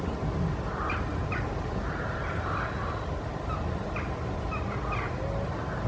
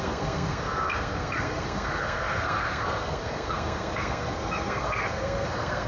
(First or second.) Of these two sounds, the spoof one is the second